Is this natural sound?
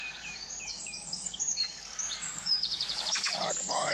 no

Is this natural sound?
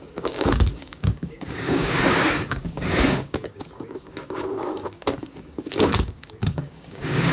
no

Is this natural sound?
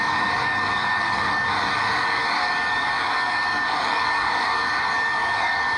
no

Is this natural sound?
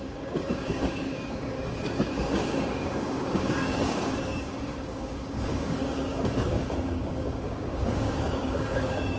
no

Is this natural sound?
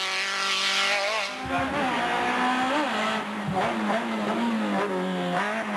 yes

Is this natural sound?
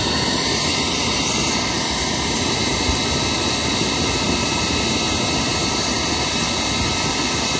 yes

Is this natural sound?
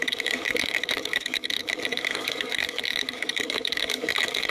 no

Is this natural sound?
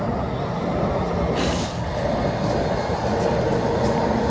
yes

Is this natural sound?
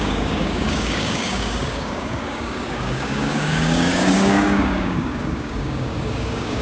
no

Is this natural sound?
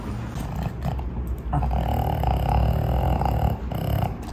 yes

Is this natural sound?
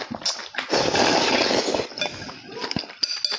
yes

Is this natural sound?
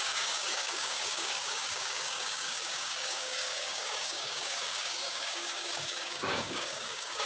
no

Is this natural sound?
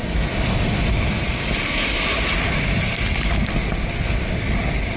yes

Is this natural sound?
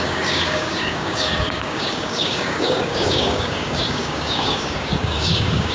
no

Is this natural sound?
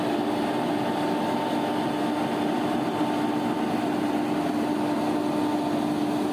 yes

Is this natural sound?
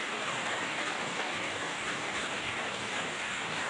no